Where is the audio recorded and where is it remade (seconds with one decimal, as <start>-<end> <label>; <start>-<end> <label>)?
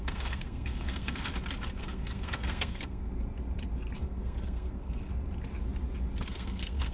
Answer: 0.0-1.3 remade; 1.3-1.8 recorded; 1.8-3.1 remade; 3.1-4.0 recorded; 4.0-5.1 remade; 5.1-6.2 recorded; 6.2-6.9 remade